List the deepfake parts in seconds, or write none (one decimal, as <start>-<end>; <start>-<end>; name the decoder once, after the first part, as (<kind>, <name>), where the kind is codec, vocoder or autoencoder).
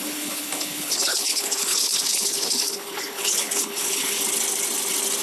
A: 0.0-4.2 (codec, HILCodec)